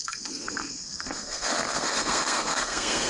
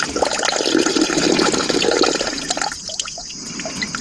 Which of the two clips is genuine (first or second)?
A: second